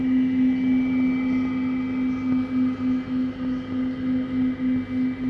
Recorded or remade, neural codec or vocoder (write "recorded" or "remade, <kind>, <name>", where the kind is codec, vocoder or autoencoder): recorded